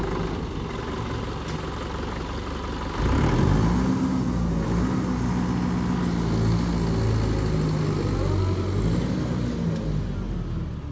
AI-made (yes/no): no